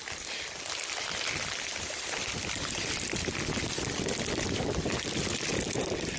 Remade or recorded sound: recorded